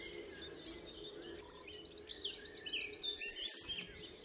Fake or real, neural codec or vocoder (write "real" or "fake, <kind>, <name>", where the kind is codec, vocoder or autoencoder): real